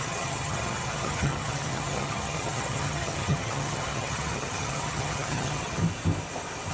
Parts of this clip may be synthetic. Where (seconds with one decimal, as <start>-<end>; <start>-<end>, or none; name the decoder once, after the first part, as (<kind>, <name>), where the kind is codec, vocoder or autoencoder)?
0.0-5.8 (vocoder, HiFi-GAN)